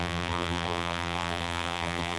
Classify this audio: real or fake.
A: fake